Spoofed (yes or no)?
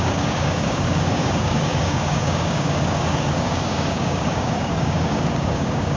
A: yes